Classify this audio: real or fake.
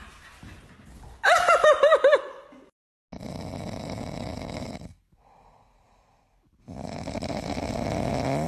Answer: real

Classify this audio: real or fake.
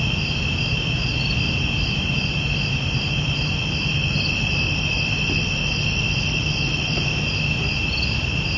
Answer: real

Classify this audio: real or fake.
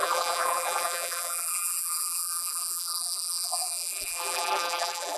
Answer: fake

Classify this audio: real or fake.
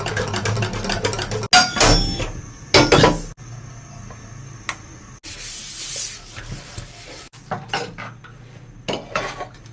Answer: real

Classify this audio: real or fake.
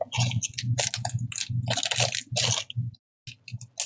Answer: real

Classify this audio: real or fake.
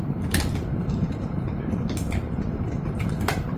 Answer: real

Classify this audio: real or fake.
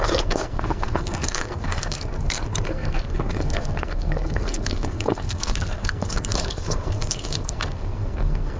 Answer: fake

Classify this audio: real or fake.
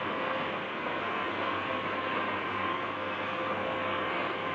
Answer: fake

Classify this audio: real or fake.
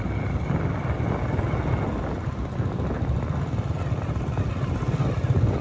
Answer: real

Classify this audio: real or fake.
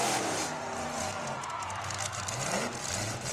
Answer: fake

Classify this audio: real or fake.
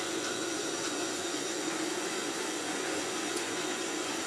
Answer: fake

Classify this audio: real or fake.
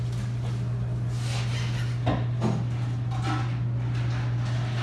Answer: real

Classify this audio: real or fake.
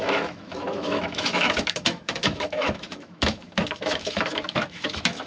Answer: fake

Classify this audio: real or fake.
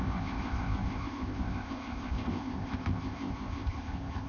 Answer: fake